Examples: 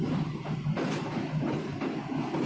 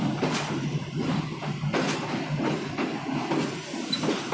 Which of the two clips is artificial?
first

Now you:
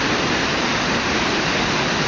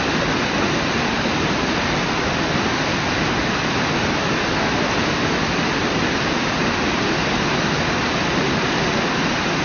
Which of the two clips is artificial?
first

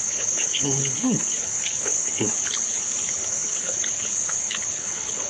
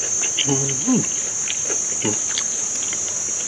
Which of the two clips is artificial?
first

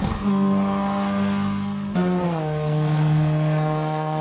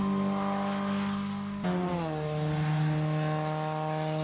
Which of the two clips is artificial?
first